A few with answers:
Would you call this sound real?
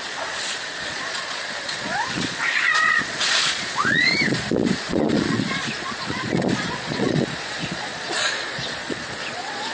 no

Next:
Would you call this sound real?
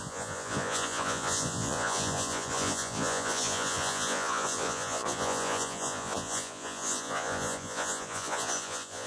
no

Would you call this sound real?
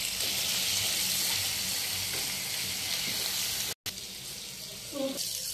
yes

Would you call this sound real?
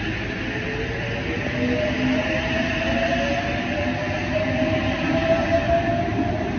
yes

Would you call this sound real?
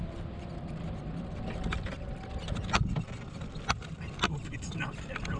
yes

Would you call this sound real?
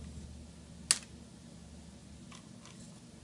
yes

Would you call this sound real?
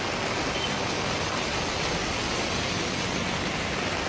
yes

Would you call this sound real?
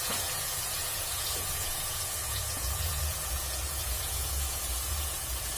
no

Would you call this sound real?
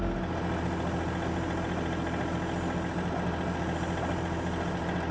yes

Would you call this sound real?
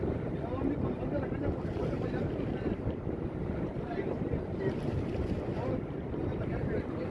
yes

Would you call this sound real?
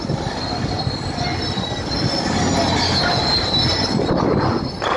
yes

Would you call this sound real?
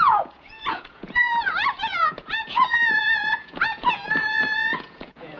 no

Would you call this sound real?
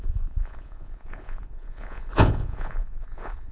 no